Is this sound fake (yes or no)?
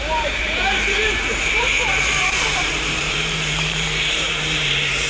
yes